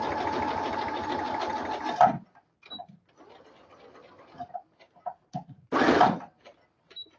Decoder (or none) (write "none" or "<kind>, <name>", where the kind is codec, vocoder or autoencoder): none